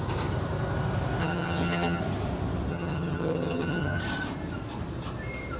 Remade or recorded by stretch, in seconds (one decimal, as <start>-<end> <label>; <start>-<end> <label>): 0.0-1.2 recorded; 1.2-2.0 remade; 2.0-2.7 recorded; 2.7-4.0 remade; 4.0-5.6 recorded